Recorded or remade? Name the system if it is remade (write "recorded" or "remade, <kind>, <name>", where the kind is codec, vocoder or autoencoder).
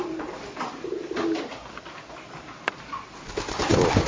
recorded